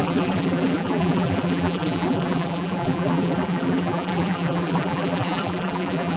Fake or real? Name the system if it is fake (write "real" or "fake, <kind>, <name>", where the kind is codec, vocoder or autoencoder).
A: fake, vocoder, BigVGAN v2